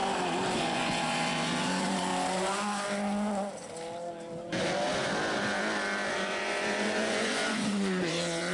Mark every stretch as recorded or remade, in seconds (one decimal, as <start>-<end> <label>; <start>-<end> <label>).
0.0-0.6 recorded; 0.6-2.1 remade; 2.1-6.1 recorded; 6.1-8.5 remade